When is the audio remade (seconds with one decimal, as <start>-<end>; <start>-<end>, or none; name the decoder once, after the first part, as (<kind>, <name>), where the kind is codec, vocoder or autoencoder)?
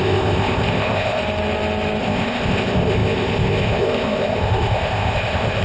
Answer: 0.0-1.2 (codec, ZipCodec); 2.0-5.6